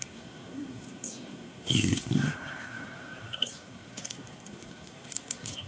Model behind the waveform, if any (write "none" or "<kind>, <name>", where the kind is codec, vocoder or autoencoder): codec, SNAC